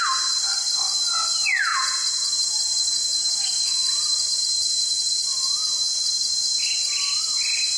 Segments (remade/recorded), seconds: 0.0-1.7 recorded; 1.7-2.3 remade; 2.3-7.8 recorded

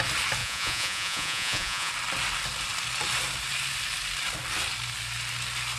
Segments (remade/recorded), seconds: 0.0-0.4 recorded; 0.4-1.9 remade; 1.9-5.8 recorded

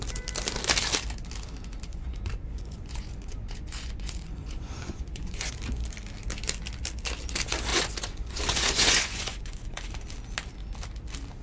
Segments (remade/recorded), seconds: 0.0-1.9 recorded; 1.9-5.5 remade; 5.5-7.7 recorded; 7.7-9.9 remade; 9.9-11.4 recorded